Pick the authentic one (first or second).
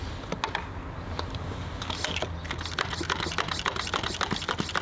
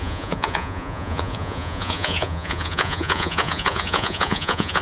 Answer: first